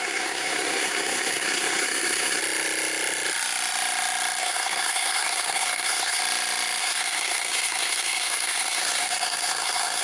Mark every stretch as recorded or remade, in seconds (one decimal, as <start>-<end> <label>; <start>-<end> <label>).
0.0-2.4 remade; 2.4-4.4 recorded; 4.4-6.2 remade; 6.2-6.8 recorded; 6.8-10.0 remade